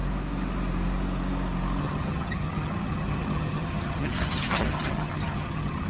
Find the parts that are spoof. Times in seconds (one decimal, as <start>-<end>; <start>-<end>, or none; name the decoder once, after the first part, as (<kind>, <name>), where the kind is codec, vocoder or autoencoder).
1.8-5.9 (vocoder, HiFi-GAN)